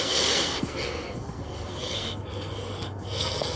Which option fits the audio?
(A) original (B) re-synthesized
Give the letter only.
B